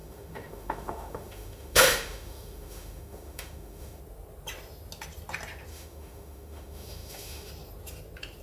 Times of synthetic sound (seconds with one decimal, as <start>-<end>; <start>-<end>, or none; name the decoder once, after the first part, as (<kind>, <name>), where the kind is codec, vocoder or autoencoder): 0.0-4.0 (autoencoder, DAC-VAE); 5.7-7.5